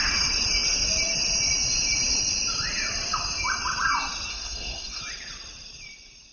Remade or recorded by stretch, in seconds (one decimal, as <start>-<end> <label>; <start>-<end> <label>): 0.0-4.3 recorded; 4.3-5.0 remade; 5.0-6.3 recorded